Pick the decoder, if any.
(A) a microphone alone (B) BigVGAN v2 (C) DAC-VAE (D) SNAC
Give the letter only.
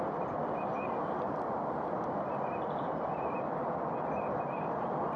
A